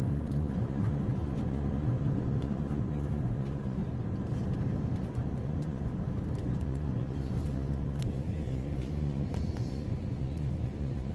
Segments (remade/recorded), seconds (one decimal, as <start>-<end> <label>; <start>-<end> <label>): 0.0-3.8 remade; 3.8-5.0 recorded; 5.0-5.9 remade; 5.9-6.6 recorded; 6.6-11.1 remade